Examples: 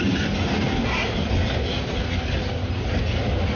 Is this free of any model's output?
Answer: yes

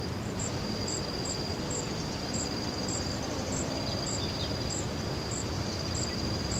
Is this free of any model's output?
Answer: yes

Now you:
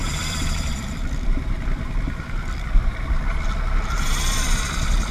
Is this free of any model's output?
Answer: no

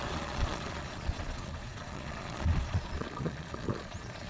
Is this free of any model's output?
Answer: no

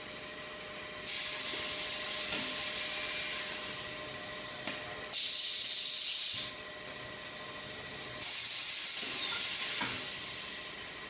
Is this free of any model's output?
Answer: yes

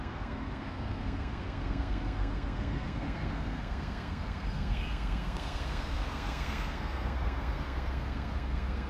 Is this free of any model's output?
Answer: no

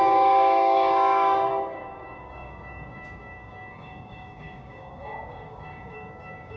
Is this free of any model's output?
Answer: no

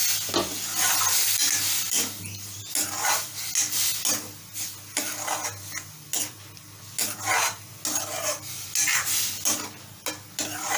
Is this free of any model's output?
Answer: yes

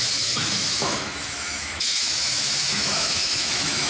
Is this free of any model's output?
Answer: no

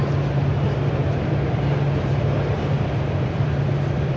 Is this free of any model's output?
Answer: no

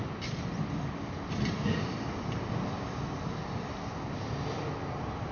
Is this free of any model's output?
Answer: yes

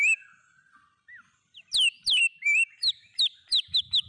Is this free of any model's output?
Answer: yes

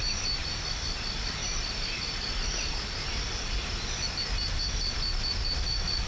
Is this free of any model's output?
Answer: yes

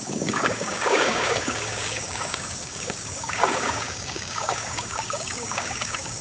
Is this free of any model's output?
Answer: no